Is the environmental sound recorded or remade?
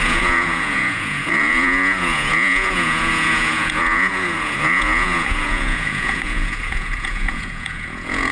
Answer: remade